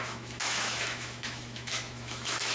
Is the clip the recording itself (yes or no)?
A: no